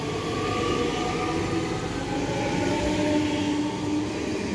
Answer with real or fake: real